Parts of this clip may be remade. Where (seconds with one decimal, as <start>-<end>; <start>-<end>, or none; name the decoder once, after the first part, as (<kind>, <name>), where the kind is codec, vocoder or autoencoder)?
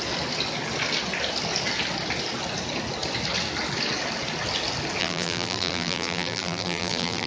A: 5.0-7.3 (vocoder, BigVGAN v2)